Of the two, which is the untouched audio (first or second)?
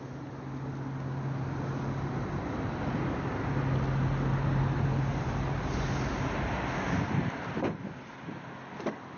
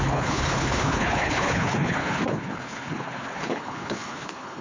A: first